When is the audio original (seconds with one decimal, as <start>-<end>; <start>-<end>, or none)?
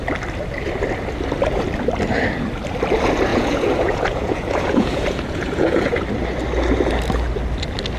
0.0-3.3; 6.0-8.0